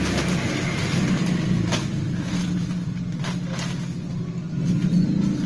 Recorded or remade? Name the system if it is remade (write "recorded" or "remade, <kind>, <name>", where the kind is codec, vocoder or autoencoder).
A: recorded